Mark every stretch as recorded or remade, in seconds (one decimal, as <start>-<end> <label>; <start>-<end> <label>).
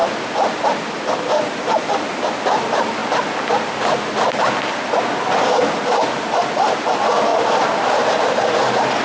0.0-7.3 recorded; 7.3-8.1 remade; 8.1-9.0 recorded